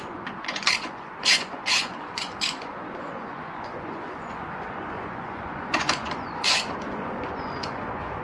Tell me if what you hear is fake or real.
fake